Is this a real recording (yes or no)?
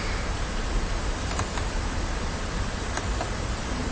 no